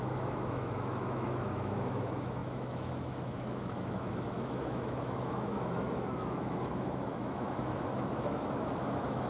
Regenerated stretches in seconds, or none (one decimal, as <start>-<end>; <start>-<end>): 0.0-9.3